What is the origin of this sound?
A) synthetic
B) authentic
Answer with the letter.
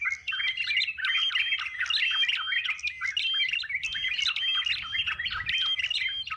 B